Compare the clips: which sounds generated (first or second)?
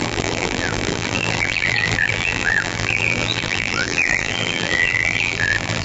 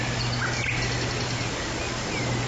first